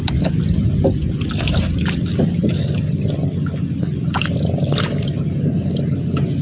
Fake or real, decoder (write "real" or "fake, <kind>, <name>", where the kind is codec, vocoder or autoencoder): real